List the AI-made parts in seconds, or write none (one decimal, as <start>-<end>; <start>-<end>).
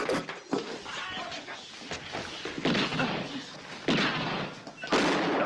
none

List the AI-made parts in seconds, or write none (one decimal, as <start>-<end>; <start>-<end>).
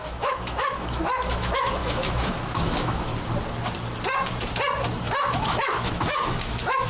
0.0-3.1; 5.0-6.9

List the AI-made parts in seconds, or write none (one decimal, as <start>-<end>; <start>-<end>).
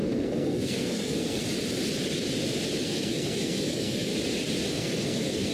0.0-1.4; 2.8-4.1; 4.7-5.5